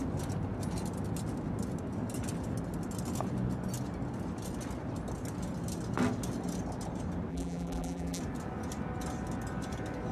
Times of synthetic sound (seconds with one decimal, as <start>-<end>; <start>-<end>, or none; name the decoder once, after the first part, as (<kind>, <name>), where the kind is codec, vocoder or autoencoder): 7.3-8.2 (vocoder, BigVGAN v2)